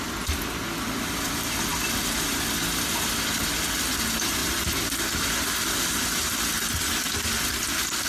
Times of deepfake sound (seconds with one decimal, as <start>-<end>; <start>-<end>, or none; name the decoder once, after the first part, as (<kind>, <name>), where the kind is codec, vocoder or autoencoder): none